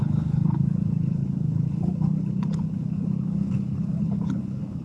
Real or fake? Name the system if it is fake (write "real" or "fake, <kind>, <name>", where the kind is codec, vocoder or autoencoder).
fake, codec, HILCodec